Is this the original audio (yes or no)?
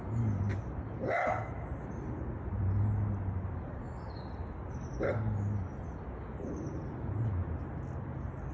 yes